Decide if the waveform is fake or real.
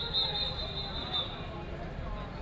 real